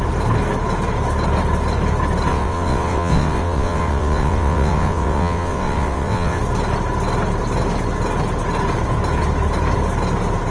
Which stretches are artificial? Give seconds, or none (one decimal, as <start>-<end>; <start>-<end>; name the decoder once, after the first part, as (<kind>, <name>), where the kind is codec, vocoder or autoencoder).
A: 2.3-6.4 (vocoder, WaveNeXt)